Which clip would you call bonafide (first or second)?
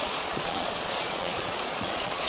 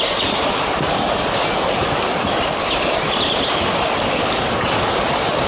second